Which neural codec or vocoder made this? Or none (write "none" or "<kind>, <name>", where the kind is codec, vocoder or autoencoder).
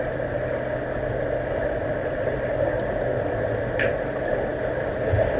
none